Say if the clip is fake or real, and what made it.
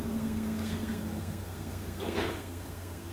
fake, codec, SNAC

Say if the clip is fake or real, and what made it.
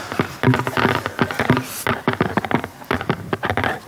real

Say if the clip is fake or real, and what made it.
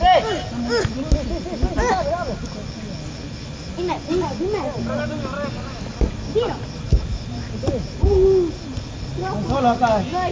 real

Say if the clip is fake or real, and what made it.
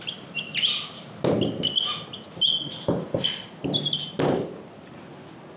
real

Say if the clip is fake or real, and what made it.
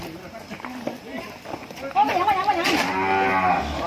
real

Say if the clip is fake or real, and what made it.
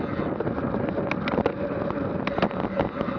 real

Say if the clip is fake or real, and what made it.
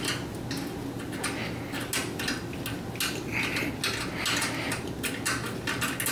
real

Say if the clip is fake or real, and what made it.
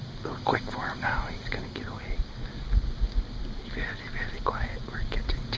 real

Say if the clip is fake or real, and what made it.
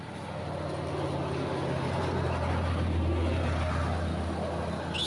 real